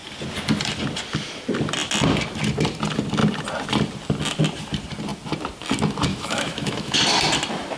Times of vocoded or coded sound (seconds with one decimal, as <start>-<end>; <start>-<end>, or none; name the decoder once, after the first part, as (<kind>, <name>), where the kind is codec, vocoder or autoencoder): 6.1-7.0 (autoencoder, DAC-VAE)